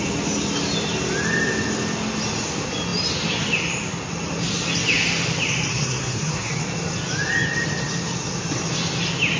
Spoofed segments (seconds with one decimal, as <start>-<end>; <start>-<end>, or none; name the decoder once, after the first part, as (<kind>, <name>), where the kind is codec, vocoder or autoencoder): 5.7-6.5 (codec, SNAC)